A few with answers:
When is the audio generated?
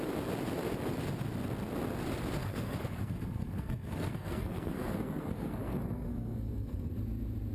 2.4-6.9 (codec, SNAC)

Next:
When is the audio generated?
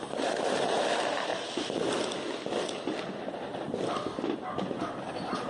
0.0-1.3 (vocoder, BigVGAN v2); 4.6-5.5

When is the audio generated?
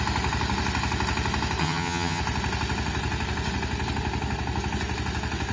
1.6-2.2 (vocoder, HiFi-GAN)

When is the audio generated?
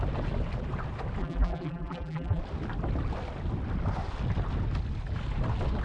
1.2-2.4 (vocoder, BigVGAN v2)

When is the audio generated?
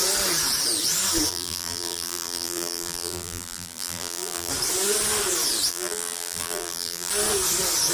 1.3-4.5 (vocoder, BigVGAN v2); 5.7-7.1